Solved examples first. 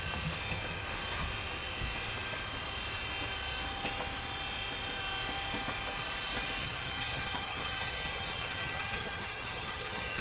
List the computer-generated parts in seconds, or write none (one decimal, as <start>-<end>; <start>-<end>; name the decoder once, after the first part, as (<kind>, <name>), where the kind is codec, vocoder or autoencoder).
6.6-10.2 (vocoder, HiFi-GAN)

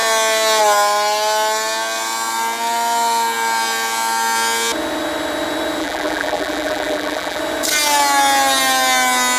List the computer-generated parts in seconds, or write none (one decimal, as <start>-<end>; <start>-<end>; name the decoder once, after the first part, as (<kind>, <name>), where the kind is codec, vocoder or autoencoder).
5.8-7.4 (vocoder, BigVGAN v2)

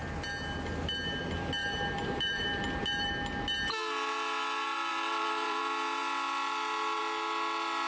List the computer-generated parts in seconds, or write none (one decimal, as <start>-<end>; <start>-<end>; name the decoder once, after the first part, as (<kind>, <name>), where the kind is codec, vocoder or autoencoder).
1.6-3.1 (vocoder, BigVGAN v2); 4.9-5.6